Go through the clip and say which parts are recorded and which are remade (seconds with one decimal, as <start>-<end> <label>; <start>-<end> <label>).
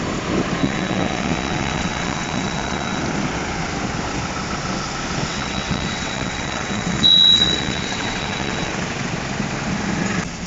0.0-0.6 recorded; 0.6-3.0 remade; 3.0-5.3 recorded; 5.3-8.7 remade; 8.7-10.5 recorded